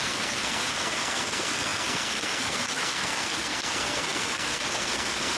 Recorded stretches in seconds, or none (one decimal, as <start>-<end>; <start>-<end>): none